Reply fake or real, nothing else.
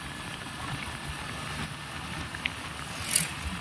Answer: real